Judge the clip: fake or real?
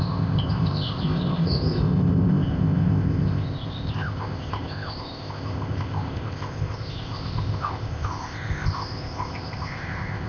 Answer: fake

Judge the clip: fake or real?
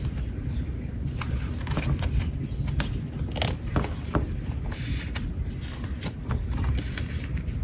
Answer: real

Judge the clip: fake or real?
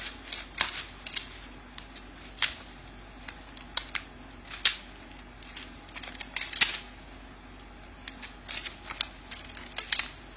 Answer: real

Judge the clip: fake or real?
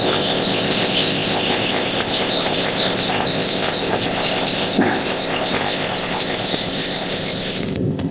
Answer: fake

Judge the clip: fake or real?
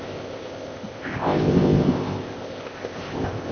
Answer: fake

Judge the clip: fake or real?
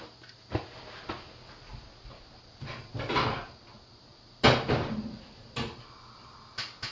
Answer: real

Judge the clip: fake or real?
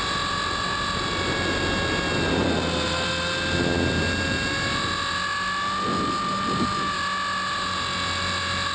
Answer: real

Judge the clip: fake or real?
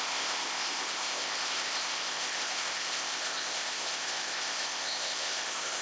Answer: fake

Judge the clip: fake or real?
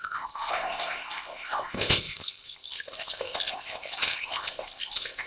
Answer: fake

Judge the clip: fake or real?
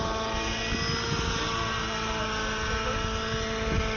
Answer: real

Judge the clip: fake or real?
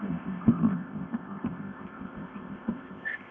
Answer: fake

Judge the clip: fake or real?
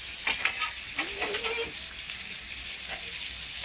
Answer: real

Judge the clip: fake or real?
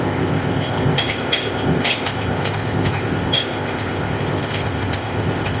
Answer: fake